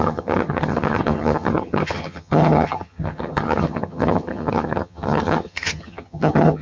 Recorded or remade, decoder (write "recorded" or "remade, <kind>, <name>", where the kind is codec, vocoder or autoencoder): remade, vocoder, HiFi-GAN